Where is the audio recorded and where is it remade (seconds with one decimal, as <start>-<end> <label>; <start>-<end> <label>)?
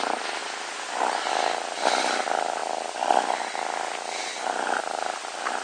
0.0-5.6 recorded